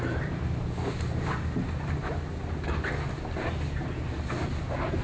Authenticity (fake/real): real